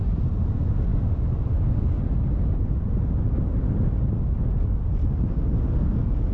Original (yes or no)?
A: yes